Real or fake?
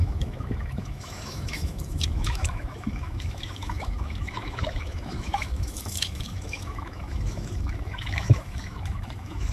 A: fake